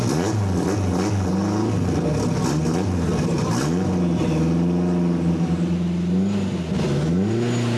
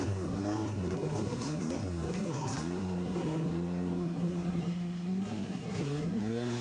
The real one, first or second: first